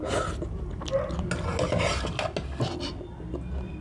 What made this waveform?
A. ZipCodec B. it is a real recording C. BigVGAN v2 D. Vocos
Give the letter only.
B